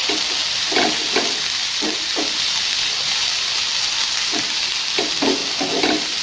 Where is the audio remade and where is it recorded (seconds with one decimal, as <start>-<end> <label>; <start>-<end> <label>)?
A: 0.0-6.2 recorded